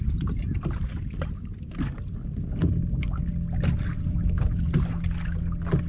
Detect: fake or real real